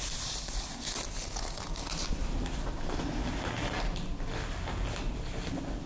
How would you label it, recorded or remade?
recorded